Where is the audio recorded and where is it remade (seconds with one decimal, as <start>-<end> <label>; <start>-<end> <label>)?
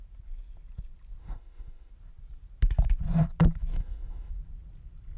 0.0-1.2 recorded; 1.2-1.9 remade; 1.9-3.7 recorded; 3.7-4.3 remade; 4.3-5.2 recorded